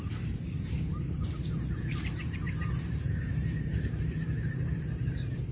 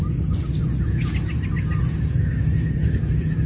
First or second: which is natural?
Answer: second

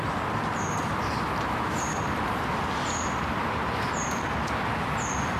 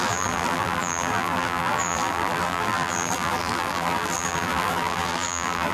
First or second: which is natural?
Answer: first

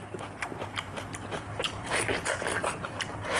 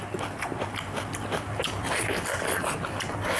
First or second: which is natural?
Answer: second